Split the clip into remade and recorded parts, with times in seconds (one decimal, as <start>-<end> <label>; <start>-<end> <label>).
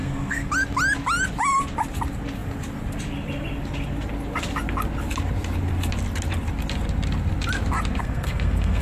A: 0.0-0.5 remade; 0.5-8.0 recorded; 8.0-8.8 remade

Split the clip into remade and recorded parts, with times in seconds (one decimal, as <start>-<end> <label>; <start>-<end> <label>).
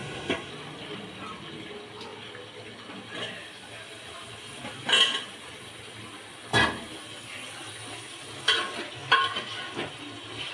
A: 0.0-0.5 remade; 0.5-10.5 recorded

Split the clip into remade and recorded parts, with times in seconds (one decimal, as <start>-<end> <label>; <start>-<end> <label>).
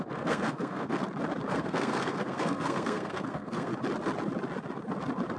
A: 0.0-1.0 remade; 1.0-1.5 recorded; 1.5-3.7 remade; 3.7-5.4 recorded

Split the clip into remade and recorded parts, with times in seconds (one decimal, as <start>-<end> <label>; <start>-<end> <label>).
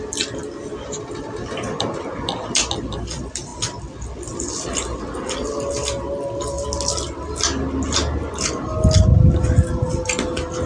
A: 0.0-10.7 recorded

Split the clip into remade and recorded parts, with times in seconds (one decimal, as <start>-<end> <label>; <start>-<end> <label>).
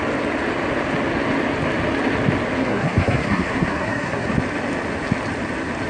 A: 0.0-2.6 recorded; 2.6-4.3 remade; 4.3-5.9 recorded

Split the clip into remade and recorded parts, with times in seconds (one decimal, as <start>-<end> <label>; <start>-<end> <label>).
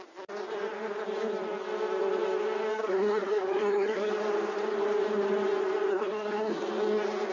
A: 0.0-2.7 recorded; 2.7-4.1 remade; 4.1-5.9 recorded; 5.9-6.6 remade; 6.6-7.3 recorded